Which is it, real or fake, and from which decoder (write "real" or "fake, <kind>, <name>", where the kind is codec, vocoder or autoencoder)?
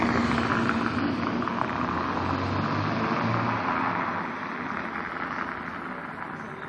real